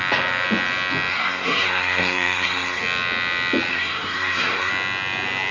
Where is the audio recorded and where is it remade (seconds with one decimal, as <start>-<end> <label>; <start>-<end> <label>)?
0.0-1.1 recorded; 1.1-2.8 remade; 2.8-3.7 recorded; 3.7-4.7 remade; 4.7-5.5 recorded